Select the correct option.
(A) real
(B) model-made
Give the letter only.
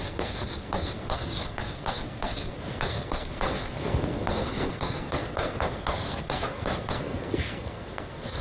B